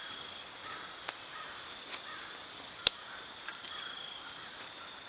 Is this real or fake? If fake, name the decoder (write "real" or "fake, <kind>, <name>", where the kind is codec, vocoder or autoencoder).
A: real